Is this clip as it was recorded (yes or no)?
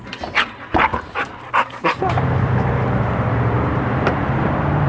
no